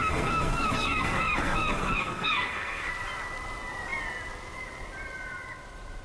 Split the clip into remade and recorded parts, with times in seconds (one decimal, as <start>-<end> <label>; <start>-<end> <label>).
0.0-2.9 remade; 2.9-6.0 recorded